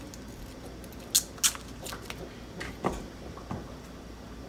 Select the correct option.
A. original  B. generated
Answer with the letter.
A